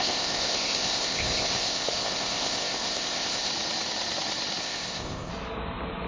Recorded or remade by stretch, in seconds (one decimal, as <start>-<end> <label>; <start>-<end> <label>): 0.0-3.5 remade; 3.5-4.6 recorded; 4.6-5.3 remade; 5.3-6.1 recorded